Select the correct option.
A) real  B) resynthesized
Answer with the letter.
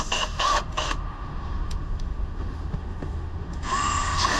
B